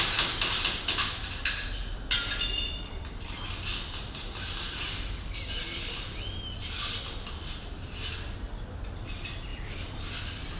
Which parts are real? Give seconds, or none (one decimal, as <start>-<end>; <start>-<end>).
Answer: 0.0-1.8; 7.0-9.5; 10.0-10.6